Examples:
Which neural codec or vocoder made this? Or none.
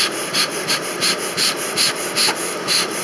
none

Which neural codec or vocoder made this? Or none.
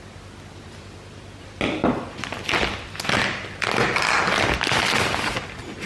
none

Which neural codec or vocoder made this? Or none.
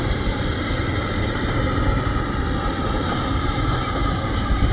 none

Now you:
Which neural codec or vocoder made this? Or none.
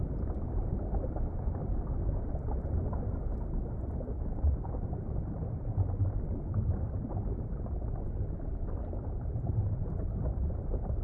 vocoder, BigVGAN v2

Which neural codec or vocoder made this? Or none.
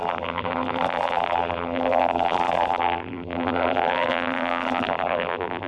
vocoder, BigVGAN v2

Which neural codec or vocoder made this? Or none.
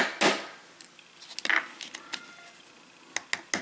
none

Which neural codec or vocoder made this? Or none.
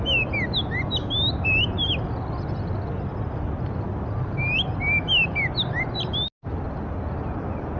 none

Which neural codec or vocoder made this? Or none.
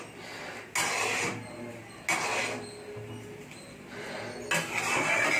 none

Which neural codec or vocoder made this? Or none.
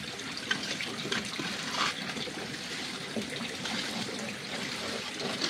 vocoder, BigVGAN v2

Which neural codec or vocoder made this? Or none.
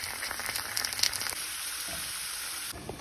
vocoder, BigVGAN v2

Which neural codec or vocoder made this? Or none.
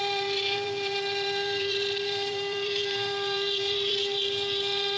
vocoder, BigVGAN v2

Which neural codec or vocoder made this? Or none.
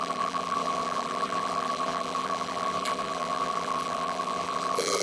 vocoder, BigVGAN v2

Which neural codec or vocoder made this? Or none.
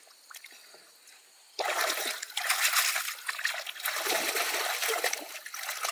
none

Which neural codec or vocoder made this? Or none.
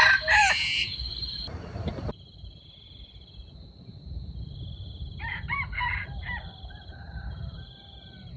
vocoder, BigVGAN v2